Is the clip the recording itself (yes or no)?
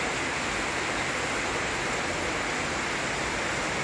yes